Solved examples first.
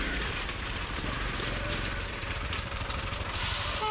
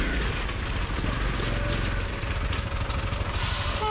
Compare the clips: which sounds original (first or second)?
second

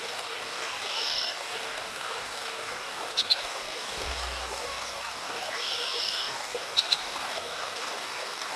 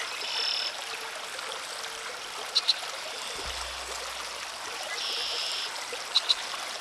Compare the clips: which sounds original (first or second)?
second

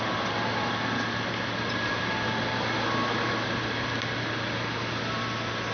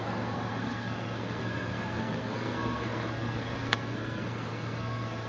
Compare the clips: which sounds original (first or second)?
first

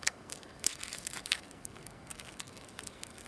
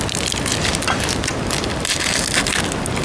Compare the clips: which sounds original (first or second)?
second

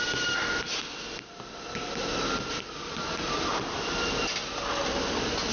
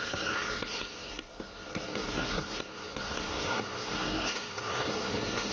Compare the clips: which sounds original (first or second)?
first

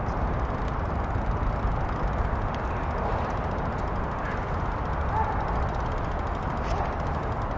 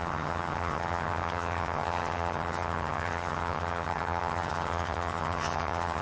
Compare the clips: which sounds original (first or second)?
first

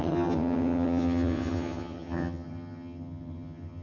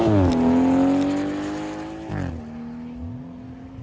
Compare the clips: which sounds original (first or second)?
second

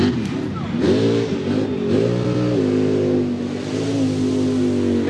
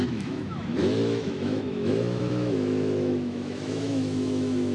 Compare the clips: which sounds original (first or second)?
first